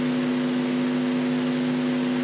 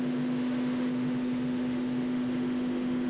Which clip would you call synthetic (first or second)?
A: second